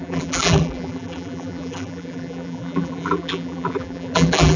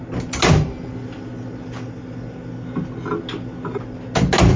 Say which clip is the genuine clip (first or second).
second